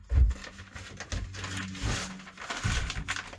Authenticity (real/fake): real